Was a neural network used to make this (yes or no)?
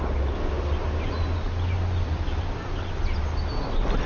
no